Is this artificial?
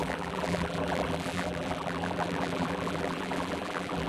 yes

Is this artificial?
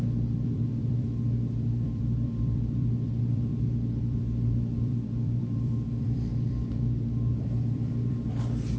yes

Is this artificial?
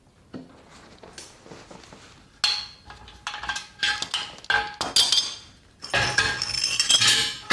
no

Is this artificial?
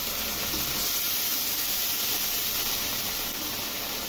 no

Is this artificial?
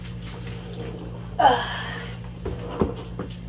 no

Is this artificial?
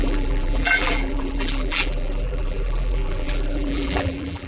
yes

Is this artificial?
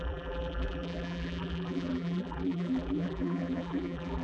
yes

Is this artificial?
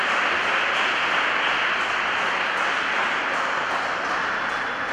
no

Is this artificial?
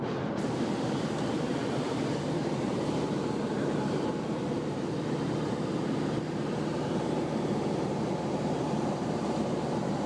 yes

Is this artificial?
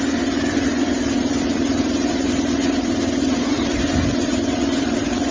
yes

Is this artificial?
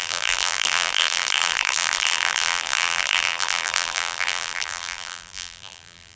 yes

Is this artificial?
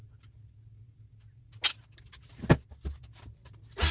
no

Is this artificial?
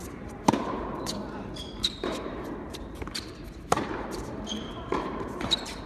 yes